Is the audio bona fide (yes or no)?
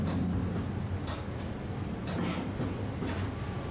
yes